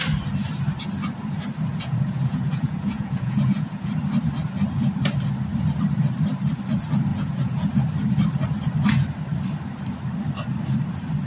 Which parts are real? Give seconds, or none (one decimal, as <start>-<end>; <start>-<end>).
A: 0.0-1.7; 3.9-7.1; 7.7-11.3